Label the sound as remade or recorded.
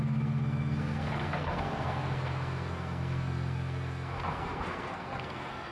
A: remade